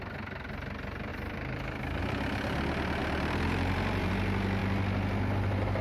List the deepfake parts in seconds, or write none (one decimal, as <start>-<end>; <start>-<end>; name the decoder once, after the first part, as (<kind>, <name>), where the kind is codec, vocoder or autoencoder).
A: 1.1-2.0 (vocoder, BigVGAN v2); 3.0-4.1; 4.6-5.8